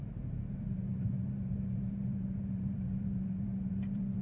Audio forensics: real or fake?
fake